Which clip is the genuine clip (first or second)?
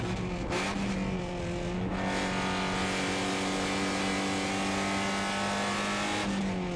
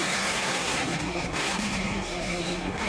first